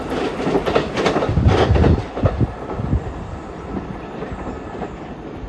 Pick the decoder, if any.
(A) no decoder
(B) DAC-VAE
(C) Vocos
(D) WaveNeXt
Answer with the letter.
A